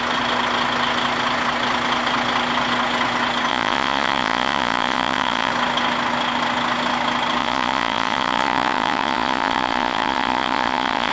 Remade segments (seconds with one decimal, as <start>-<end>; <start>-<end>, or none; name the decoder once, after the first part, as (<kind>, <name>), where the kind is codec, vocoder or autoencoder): 3.5-5.5 (vocoder, Vocos); 7.4-11.1